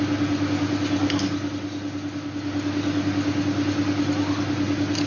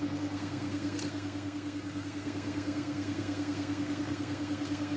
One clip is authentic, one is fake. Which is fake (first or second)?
second